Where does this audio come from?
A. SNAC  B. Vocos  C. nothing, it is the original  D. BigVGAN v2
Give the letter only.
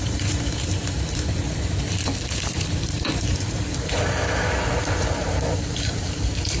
D